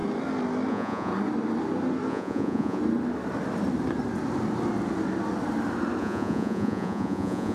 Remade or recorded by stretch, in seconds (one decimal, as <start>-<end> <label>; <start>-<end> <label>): 0.0-0.7 recorded; 0.7-1.1 remade; 1.1-2.1 recorded; 2.1-2.8 remade; 2.8-6.0 recorded; 6.0-7.5 remade